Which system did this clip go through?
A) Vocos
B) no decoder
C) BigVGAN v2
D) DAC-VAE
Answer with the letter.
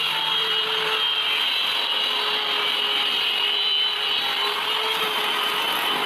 B